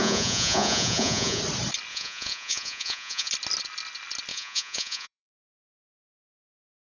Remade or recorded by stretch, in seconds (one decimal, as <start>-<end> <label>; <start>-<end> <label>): 0.0-1.4 remade; 1.4-1.9 recorded; 1.9-3.3 remade; 3.3-4.3 recorded; 4.3-5.9 remade; 5.9-6.9 recorded